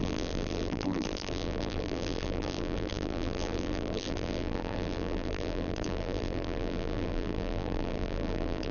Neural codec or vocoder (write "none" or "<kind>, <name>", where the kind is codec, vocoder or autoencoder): vocoder, BigVGAN v2